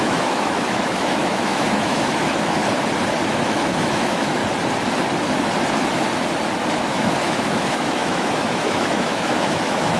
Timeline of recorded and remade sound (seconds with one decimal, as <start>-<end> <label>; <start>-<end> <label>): 0.0-2.6 remade; 2.6-3.3 recorded; 3.3-4.4 remade; 4.4-6.8 recorded; 6.8-10.0 remade